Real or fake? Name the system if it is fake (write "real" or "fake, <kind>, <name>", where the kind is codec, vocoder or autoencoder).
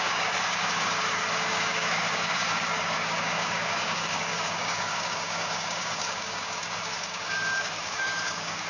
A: fake, codec, DAC